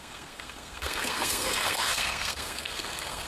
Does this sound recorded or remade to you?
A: remade